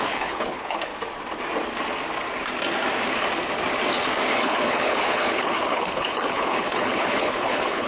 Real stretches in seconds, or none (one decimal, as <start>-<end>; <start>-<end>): 0.9-4.3